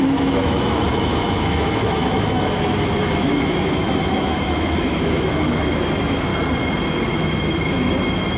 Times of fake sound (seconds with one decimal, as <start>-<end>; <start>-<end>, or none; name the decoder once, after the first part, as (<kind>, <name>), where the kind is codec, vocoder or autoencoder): 0.0-6.3 (autoencoder, DAC-VAE); 7.2-8.4